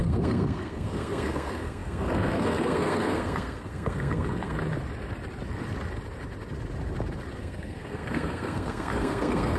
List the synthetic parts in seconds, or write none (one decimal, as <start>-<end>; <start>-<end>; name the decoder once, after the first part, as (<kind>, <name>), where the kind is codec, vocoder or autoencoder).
0.0-4.6 (codec, SNAC); 7.4-9.6